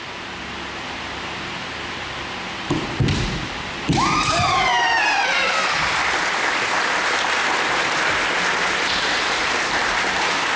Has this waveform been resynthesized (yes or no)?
yes